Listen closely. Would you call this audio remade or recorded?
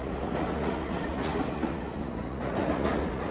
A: remade